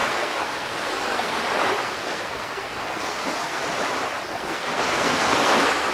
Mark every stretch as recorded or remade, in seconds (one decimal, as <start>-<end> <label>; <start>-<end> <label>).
0.0-1.4 remade; 1.4-1.8 recorded; 1.8-3.6 remade; 3.6-4.3 recorded; 4.3-5.9 remade

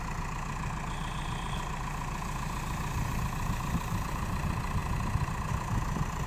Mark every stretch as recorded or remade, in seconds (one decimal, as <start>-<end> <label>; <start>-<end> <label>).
0.0-6.3 recorded

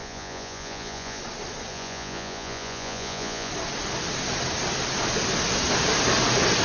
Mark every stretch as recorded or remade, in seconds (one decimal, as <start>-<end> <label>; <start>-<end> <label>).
0.0-1.2 remade; 1.2-1.7 recorded; 1.7-3.5 remade; 3.5-6.6 recorded

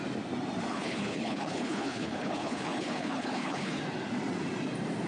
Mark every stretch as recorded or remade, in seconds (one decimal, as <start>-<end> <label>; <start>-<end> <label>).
0.0-0.7 recorded; 0.7-3.8 remade; 3.8-5.1 recorded

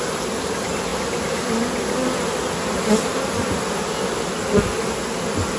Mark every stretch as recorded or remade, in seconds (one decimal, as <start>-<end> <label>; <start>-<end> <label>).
0.0-5.6 recorded

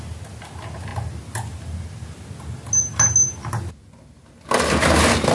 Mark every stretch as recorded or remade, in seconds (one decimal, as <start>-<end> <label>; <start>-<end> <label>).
0.0-5.3 recorded